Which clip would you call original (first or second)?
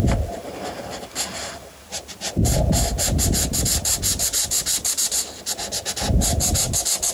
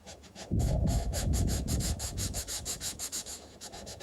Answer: first